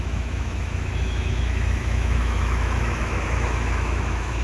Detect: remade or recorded remade